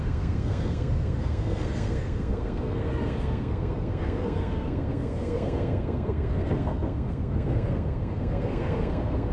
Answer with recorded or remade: remade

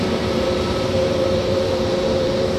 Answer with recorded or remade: remade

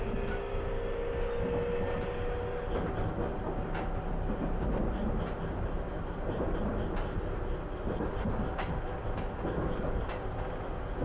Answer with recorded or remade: recorded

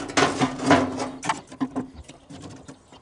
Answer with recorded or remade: recorded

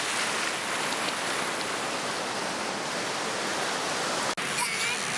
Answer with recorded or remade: recorded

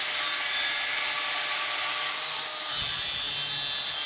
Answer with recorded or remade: recorded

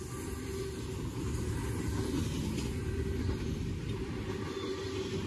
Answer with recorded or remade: recorded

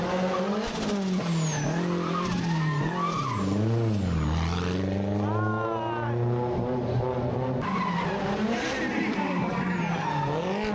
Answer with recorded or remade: recorded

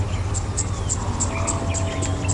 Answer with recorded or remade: recorded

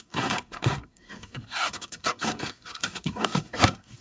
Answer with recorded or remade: remade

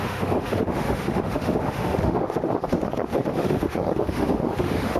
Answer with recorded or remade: remade